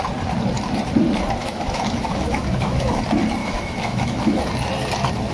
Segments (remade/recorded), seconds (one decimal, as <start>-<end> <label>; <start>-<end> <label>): 0.0-1.4 recorded; 1.4-3.0 remade; 3.0-3.4 recorded; 3.4-4.4 remade; 4.4-5.3 recorded